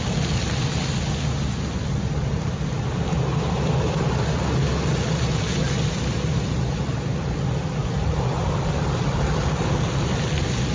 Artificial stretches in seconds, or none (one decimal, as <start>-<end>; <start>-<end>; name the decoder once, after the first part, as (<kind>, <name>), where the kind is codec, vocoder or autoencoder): none